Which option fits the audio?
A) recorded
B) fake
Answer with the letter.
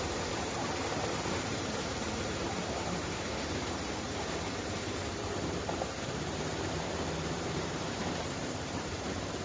B